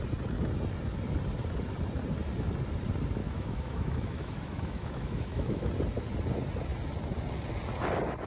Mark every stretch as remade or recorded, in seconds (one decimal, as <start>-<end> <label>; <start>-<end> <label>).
0.0-3.2 recorded; 3.2-5.7 remade; 5.7-8.3 recorded